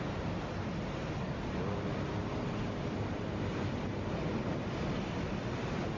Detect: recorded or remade recorded